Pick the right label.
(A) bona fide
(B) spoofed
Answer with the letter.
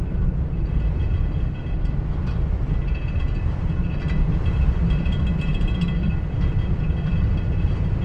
A